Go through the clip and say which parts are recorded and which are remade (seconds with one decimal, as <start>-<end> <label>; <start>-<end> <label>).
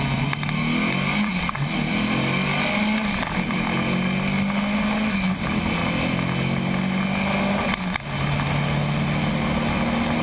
0.0-10.2 recorded